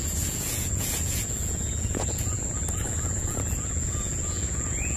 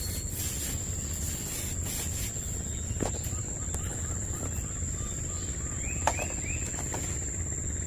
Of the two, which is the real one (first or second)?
second